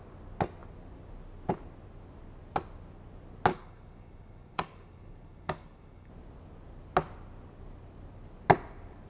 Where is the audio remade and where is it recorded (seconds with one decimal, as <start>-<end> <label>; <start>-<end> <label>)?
0.0-3.5 recorded; 3.5-6.1 remade; 6.1-9.1 recorded